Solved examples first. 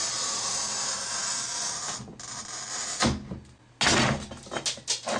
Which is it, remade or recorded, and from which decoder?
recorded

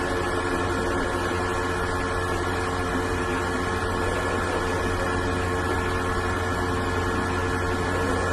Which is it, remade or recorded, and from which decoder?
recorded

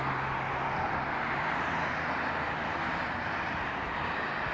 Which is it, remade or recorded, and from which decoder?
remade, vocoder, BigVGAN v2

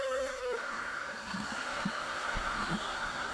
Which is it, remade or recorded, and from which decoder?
remade, codec, SNAC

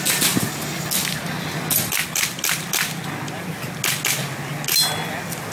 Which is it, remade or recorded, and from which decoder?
recorded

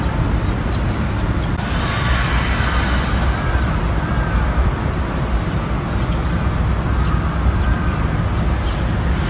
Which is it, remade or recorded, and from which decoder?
recorded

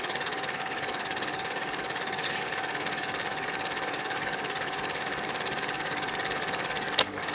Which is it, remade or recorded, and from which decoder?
remade, codec, DAC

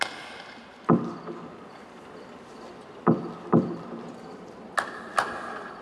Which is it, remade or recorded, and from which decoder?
recorded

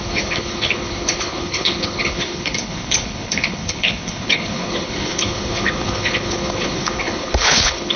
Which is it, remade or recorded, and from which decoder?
remade, codec, HILCodec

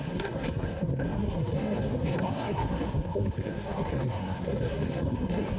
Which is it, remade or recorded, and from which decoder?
remade, codec, SNAC